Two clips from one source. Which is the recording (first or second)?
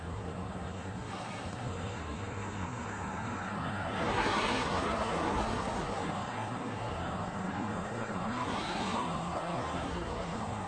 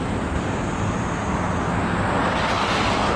second